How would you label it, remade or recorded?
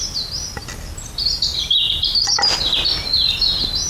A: recorded